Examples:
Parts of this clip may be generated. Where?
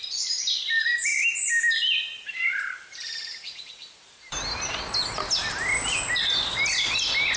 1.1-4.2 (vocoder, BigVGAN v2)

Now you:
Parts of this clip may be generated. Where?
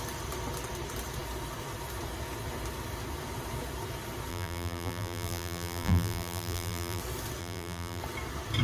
4.3-7.0 (vocoder, BigVGAN v2); 7.4-8.0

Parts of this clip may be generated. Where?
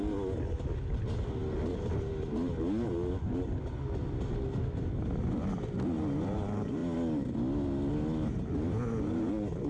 none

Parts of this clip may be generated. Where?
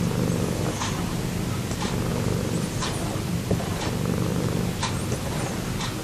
2.1-3.8 (vocoder, BigVGAN v2); 4.3-5.0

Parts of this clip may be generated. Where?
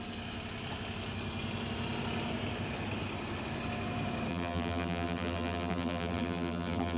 4.3-7.0 (vocoder, BigVGAN v2)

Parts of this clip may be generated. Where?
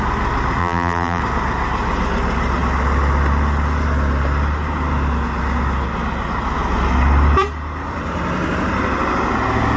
0.6-1.2 (vocoder, BigVGAN v2)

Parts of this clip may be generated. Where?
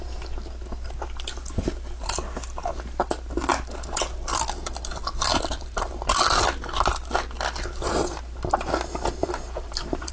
5.3-5.9 (vocoder, BigVGAN v2); 9.2-10.1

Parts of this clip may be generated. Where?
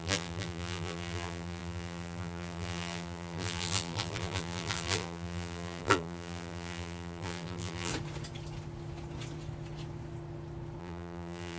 0.0-7.9 (vocoder, BigVGAN v2); 10.8-11.6